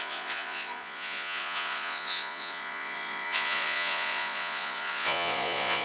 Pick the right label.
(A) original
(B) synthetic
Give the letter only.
B